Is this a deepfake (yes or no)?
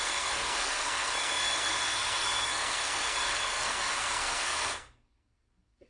yes